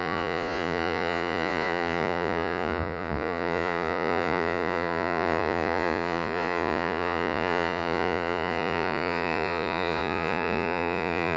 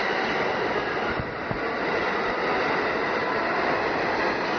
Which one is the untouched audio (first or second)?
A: second